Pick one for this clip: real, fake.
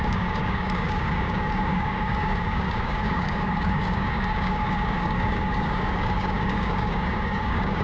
fake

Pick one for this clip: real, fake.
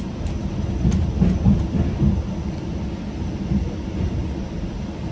real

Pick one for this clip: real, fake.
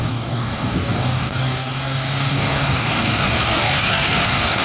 fake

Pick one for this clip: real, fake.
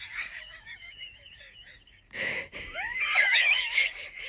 fake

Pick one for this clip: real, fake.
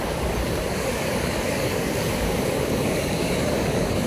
fake